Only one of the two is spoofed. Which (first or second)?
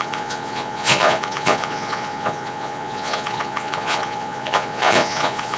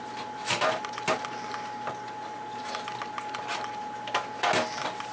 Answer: first